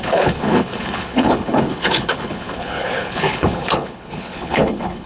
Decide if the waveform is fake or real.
fake